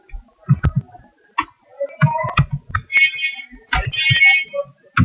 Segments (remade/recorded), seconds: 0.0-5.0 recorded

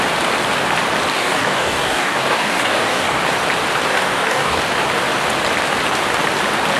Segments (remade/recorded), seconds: 0.0-1.1 recorded; 1.1-3.2 remade; 3.2-3.9 recorded; 3.9-4.6 remade; 4.6-6.8 recorded